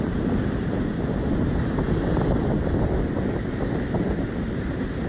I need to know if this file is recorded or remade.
recorded